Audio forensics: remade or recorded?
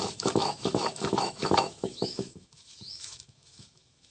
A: remade